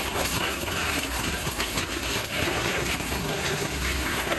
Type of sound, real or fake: fake